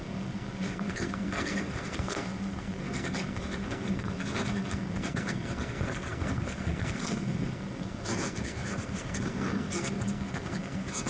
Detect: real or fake fake